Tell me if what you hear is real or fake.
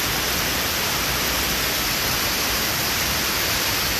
real